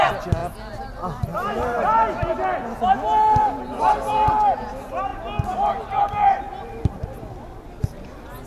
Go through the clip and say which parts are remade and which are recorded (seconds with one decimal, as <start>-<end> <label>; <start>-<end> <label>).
0.0-8.5 recorded